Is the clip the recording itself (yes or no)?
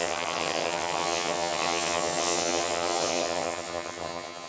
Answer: no